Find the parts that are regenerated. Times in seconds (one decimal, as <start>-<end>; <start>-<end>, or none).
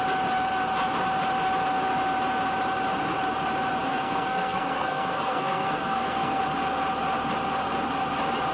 3.9-6.4